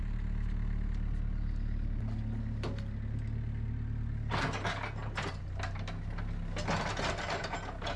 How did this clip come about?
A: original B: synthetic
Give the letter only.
A